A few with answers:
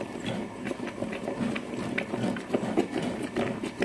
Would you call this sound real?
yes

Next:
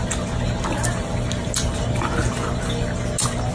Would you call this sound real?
yes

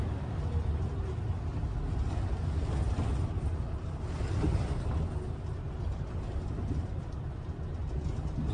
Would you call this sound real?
yes